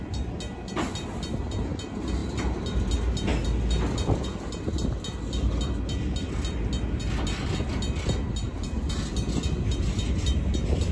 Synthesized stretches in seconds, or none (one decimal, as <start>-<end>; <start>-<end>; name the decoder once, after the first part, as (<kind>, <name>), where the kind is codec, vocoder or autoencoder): none